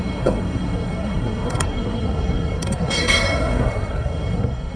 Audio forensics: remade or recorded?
remade